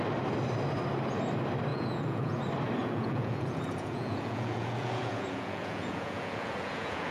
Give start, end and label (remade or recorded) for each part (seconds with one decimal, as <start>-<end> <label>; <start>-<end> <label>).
0.0-1.7 recorded; 1.7-2.4 remade; 2.4-2.8 recorded; 2.8-7.1 remade